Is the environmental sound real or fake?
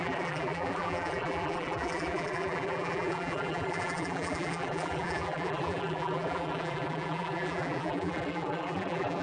fake